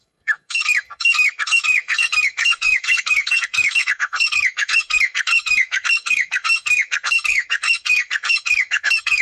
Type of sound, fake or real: fake